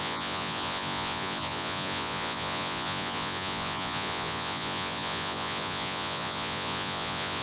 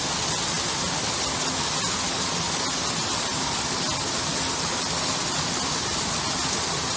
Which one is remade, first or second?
first